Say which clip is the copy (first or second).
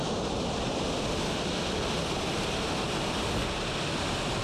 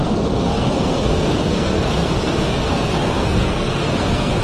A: second